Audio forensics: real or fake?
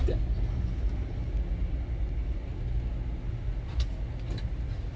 real